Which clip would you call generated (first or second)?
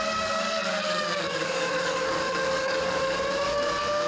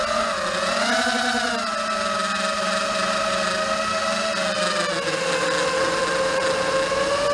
first